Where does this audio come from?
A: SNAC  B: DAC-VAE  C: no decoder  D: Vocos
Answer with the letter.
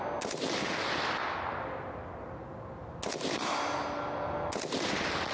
C